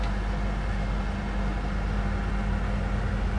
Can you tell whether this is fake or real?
real